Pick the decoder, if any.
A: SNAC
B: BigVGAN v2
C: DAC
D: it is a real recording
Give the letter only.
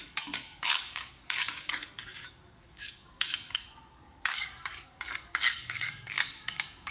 C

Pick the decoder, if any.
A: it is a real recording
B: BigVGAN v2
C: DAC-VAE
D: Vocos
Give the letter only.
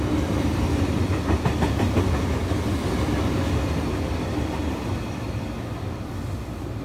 A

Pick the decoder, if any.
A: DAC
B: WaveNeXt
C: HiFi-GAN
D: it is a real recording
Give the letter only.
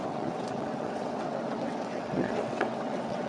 B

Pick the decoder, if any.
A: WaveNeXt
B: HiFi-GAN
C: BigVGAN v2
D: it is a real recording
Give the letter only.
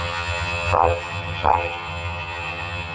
B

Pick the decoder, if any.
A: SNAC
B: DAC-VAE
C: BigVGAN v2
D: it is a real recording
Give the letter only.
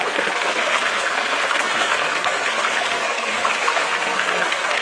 A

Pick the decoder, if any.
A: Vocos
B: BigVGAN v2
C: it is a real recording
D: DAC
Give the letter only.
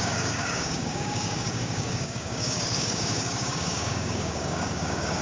D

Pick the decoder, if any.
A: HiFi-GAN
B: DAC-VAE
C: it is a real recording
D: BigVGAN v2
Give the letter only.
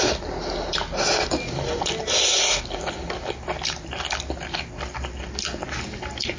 C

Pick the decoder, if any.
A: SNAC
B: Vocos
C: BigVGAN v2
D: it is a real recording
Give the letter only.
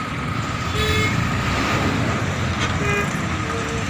D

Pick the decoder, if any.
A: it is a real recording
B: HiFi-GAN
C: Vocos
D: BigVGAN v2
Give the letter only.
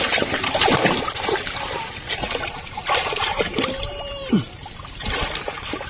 D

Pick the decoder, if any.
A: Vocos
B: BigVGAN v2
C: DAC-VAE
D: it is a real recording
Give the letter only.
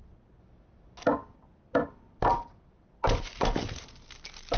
D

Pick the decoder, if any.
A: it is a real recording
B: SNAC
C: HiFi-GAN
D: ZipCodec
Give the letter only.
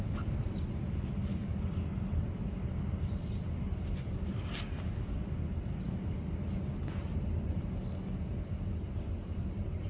A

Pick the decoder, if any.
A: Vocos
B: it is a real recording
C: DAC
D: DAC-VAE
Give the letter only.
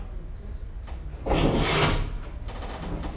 B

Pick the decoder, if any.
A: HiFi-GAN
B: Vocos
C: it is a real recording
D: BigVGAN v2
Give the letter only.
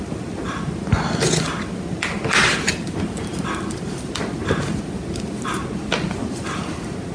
C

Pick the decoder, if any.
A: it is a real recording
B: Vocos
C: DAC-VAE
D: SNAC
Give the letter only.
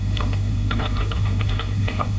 D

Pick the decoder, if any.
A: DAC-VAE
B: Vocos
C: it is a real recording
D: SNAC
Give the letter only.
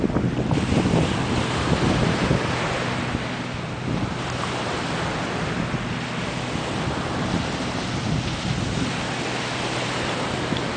C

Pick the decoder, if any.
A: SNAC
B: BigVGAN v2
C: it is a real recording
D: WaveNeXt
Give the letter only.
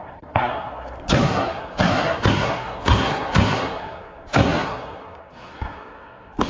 A